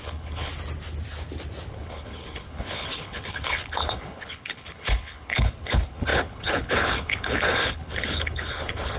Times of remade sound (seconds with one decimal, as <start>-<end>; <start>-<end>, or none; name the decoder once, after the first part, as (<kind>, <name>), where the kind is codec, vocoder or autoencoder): 0.0-0.5 (codec, HILCodec); 1.7-9.0